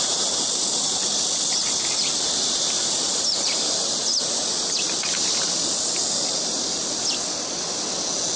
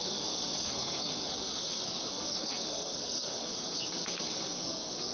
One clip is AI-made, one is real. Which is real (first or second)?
first